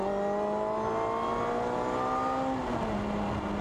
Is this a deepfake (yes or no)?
no